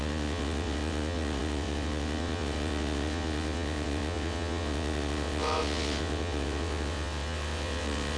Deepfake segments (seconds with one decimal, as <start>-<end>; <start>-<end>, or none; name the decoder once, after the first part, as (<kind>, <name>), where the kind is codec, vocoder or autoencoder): 0.0-8.2 (vocoder, WaveNeXt)

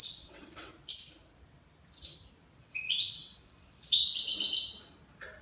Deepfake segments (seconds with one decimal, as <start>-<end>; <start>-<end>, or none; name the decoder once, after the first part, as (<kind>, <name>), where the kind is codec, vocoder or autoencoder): 0.0-0.7 (vocoder, WaveNeXt); 2.6-4.0

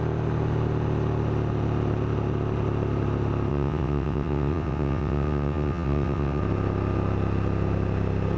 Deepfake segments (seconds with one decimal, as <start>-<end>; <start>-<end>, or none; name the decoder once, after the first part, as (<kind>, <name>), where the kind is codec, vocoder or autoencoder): 3.5-6.4 (vocoder, WaveNeXt)

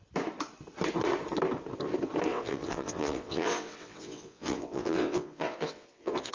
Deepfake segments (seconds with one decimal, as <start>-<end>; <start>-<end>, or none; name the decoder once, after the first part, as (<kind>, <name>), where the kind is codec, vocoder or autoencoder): 2.3-6.3 (vocoder, WaveNeXt)

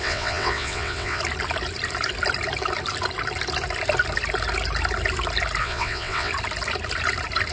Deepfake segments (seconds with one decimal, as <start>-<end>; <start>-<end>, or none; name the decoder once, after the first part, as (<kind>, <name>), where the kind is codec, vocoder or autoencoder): 0.0-1.2 (vocoder, WaveNeXt); 5.6-6.3

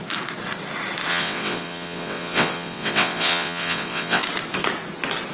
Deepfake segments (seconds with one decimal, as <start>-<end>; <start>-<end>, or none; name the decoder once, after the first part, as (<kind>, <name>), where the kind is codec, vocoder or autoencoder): 1.1-4.2 (vocoder, WaveNeXt)

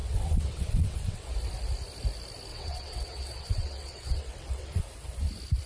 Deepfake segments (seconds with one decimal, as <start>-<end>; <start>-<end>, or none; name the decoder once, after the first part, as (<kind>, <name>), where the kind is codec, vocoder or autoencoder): 0.0-1.3 (vocoder, WaveNeXt); 2.5-4.8